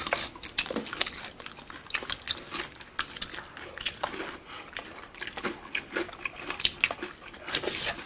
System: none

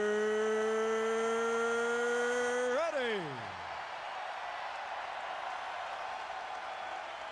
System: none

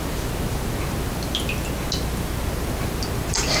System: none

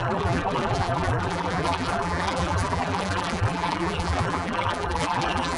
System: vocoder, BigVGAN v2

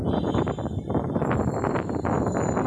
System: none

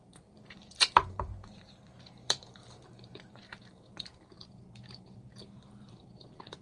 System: vocoder, BigVGAN v2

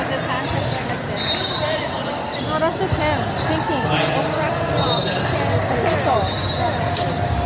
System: none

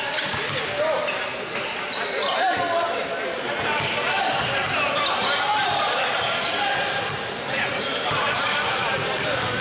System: none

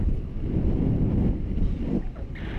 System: none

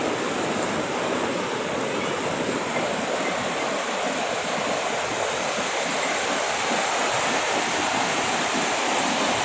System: vocoder, BigVGAN v2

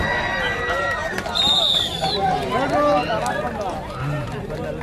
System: none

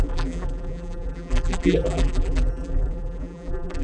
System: vocoder, BigVGAN v2